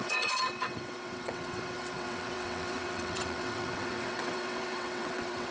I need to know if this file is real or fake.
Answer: fake